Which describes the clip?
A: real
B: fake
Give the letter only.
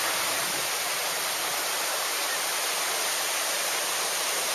A